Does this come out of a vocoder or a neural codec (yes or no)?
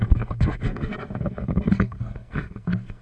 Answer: yes